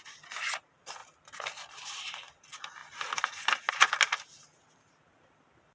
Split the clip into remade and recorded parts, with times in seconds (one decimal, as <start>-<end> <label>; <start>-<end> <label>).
0.0-5.7 recorded